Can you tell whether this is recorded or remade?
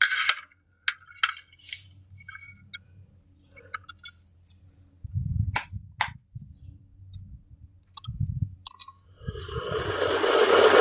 recorded